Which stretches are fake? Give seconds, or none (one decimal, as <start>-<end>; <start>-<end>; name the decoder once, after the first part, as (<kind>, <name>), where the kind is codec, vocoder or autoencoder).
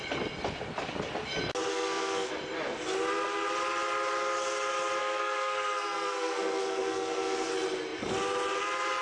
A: 1.7-2.3 (codec, SNAC); 5.0-7.5